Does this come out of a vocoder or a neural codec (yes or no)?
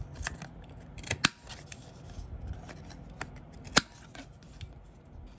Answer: no